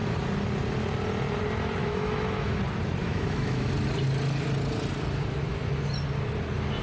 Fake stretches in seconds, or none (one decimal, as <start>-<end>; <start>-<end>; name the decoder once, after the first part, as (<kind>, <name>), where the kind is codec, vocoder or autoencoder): 1.8-2.6 (autoencoder, DAC-VAE); 3.0-3.7